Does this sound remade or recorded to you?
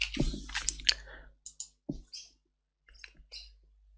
recorded